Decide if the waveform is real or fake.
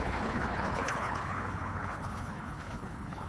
fake